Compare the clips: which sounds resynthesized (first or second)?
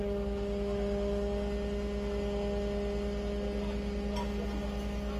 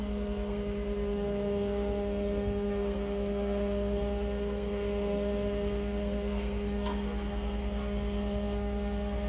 second